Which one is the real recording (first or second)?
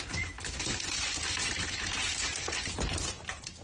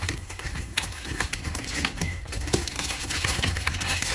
first